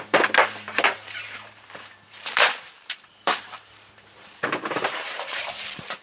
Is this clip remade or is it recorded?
remade